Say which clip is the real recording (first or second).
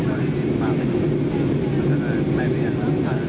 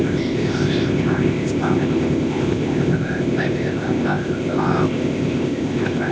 first